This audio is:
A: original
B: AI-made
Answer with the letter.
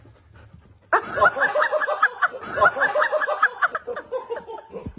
A